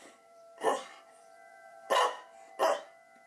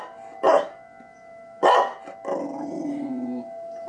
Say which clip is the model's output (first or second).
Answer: first